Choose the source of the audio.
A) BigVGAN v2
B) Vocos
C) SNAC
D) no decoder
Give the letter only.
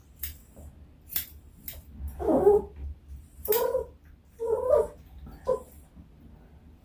D